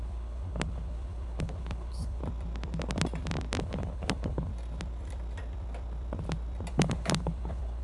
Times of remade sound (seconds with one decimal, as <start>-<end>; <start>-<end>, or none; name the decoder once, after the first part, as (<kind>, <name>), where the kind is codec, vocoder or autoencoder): 0.0-2.2 (codec, HILCodec); 3.6-4.5; 6.7-7.8